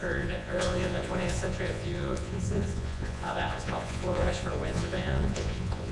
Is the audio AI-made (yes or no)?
yes